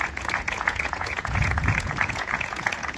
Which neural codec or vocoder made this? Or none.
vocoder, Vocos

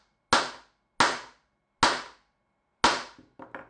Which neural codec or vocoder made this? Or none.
none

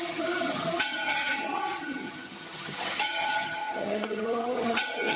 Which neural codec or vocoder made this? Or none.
vocoder, HiFi-GAN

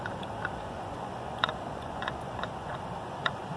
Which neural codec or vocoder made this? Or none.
vocoder, Vocos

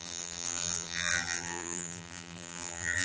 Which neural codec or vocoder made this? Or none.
vocoder, BigVGAN v2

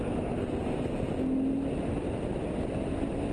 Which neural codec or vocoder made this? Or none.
none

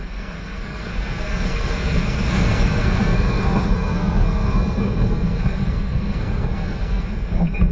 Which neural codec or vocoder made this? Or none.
codec, SNAC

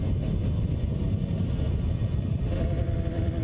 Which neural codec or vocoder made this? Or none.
none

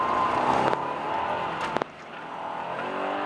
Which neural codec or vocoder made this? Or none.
none